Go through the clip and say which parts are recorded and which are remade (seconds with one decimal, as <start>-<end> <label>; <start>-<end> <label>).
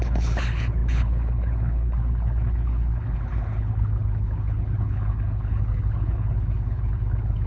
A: 0.0-7.5 remade